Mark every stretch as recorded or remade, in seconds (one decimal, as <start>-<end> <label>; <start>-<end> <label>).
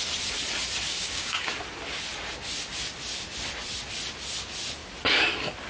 0.0-0.9 recorded; 0.9-1.5 remade; 1.5-5.7 recorded